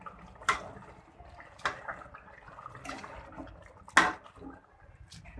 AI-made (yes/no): no